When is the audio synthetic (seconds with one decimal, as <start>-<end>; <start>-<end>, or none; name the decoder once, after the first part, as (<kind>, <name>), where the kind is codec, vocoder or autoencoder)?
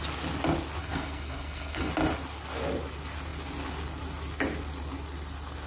0.8-1.9 (codec, SNAC)